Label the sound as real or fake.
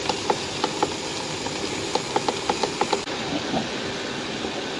real